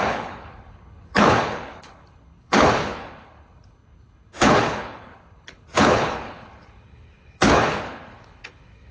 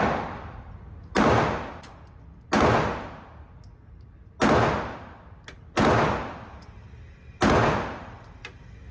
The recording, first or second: second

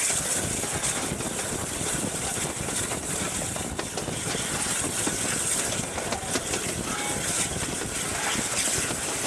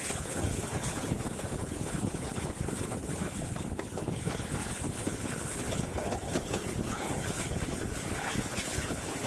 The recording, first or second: first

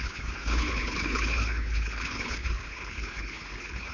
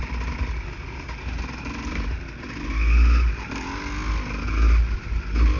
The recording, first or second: second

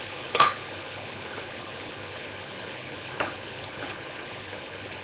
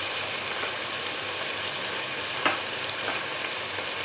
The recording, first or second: second